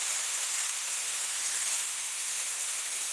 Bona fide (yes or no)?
no